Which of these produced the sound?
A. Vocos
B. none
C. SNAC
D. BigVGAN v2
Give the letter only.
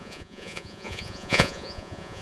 A